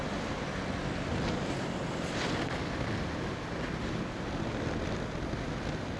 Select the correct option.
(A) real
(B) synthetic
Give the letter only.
A